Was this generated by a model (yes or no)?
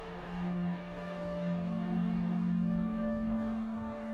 yes